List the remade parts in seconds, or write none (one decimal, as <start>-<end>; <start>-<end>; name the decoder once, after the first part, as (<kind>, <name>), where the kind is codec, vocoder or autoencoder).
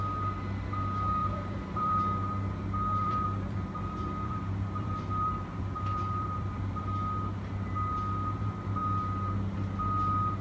1.2-2.0 (vocoder, BigVGAN v2); 3.0-6.8